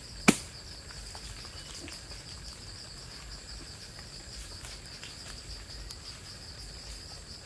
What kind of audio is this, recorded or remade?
recorded